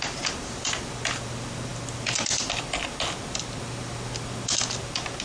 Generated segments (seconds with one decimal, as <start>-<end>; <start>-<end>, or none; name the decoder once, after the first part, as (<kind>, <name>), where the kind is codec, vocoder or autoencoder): none